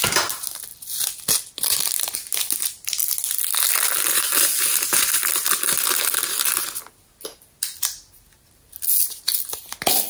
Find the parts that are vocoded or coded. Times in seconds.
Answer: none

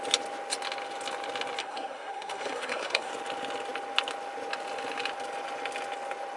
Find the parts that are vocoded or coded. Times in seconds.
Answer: 1.6-3.1 (codec, SNAC)

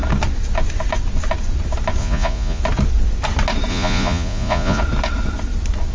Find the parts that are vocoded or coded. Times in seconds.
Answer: 2.0-2.6 (vocoder, Vocos); 3.7-4.8

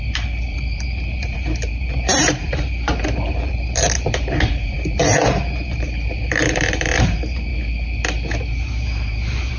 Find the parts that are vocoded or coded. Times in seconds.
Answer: 0.0-7.5 (vocoder, BigVGAN v2); 8.4-9.6

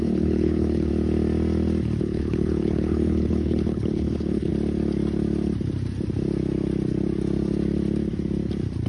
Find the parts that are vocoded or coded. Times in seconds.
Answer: 0.0-0.9 (codec, HILCodec); 2.0-4.5

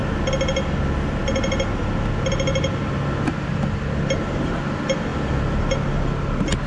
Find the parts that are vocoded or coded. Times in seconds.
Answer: none

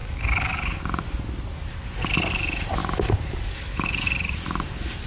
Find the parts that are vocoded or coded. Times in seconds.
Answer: 0.0-0.8 (codec, DAC); 2.8-3.6